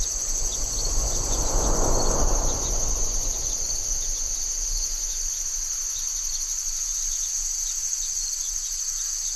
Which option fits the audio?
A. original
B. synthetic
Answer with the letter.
B